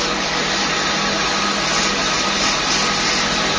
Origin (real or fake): real